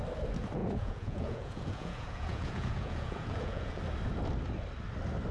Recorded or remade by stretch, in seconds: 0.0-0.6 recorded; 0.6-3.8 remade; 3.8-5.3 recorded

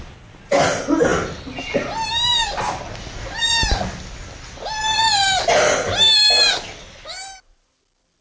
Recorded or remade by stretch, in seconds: 0.0-8.2 recorded

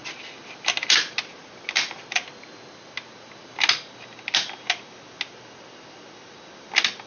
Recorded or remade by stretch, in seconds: 0.0-7.1 recorded

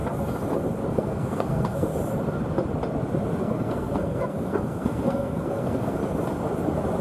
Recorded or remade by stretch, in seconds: 0.0-0.9 recorded; 0.9-1.9 remade; 1.9-3.4 recorded; 3.4-6.0 remade; 6.0-7.0 recorded

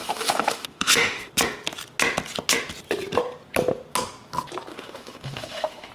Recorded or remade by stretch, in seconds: 0.0-1.3 remade; 1.3-4.7 recorded; 4.7-5.9 remade

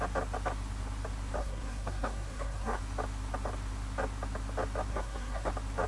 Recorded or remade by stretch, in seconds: 0.0-1.4 recorded; 1.4-2.8 remade; 2.8-4.9 recorded; 4.9-5.5 remade; 5.5-5.9 recorded

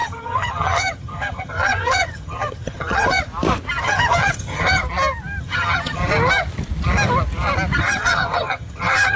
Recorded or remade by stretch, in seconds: 0.0-3.3 remade; 3.3-3.8 recorded; 3.8-4.8 remade; 4.8-5.4 recorded; 5.4-6.0 remade; 6.0-7.8 recorded; 7.8-9.2 remade

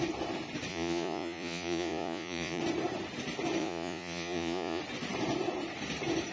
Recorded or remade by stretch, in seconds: 0.0-0.7 recorded; 0.7-2.6 remade; 2.6-3.6 recorded; 3.6-4.8 remade; 4.8-6.3 recorded